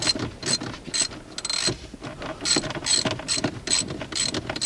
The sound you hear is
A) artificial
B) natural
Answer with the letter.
B